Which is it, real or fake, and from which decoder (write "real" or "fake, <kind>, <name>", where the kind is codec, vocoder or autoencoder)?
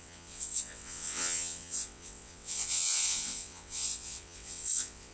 fake, vocoder, WaveNeXt